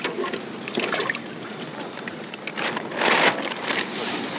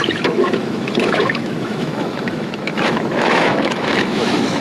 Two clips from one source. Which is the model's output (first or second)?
second